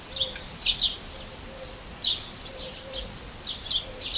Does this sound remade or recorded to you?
recorded